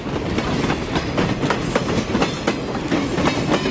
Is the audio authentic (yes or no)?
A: yes